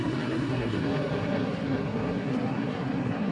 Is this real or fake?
fake